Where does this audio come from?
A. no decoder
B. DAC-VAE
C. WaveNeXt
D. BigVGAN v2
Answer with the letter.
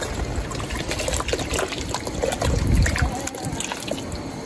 A